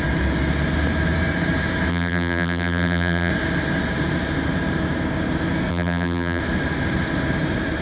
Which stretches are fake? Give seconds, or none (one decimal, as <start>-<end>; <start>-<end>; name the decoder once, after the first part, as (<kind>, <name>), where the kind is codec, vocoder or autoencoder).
1.9-3.3 (vocoder, BigVGAN v2); 5.7-6.4